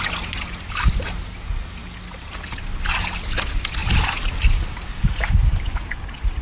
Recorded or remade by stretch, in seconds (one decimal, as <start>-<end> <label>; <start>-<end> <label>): 0.0-1.8 recorded; 1.8-2.3 remade; 2.3-6.4 recorded